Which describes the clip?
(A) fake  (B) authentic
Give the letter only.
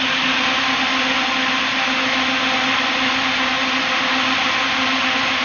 B